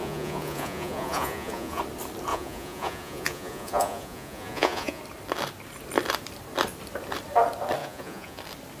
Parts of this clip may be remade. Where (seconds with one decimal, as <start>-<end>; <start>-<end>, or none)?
0.0-1.8; 2.3-5.0; 7.8-8.4